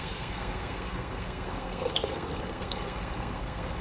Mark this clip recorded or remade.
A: remade